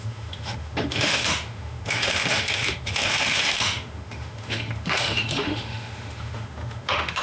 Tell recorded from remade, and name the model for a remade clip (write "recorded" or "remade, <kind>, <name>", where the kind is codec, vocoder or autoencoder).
remade, autoencoder, DAC-VAE